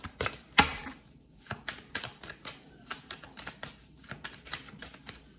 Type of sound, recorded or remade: remade